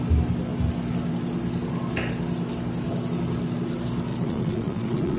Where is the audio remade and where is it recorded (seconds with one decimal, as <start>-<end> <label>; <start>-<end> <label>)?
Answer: 0.0-4.1 recorded; 4.1-5.2 remade